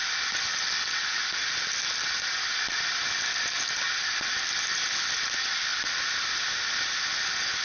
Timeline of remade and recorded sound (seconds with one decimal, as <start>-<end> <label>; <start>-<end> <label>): 0.0-7.6 recorded